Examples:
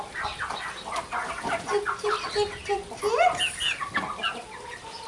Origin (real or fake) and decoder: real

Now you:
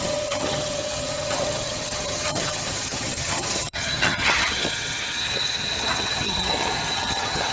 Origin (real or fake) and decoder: fake, vocoder, HiFi-GAN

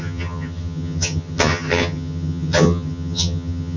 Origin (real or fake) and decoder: fake, vocoder, HiFi-GAN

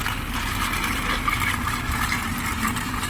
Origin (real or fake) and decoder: real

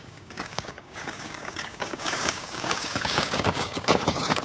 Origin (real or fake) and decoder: fake, codec, DAC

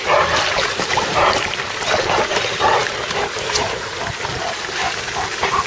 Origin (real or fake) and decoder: fake, vocoder, BigVGAN v2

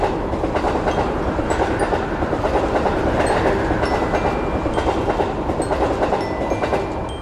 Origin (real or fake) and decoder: real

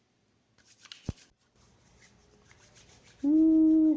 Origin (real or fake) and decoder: real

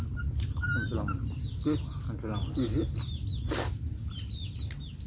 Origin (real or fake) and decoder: real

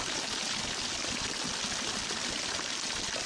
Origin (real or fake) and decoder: real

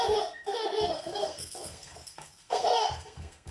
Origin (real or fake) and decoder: fake, codec, SNAC